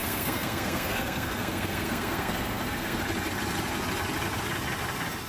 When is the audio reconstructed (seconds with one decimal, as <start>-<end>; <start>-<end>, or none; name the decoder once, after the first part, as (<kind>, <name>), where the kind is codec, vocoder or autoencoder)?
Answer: 0.0-3.0 (codec, SNAC)